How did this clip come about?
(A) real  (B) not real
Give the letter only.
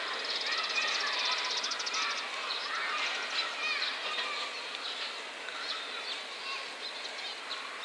A